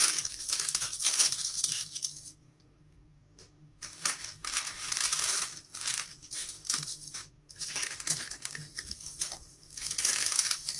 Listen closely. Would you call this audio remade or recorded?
remade